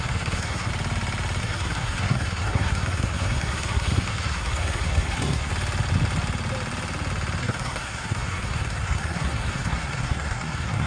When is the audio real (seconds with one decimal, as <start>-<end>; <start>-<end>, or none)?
0.7-1.4; 5.5-7.4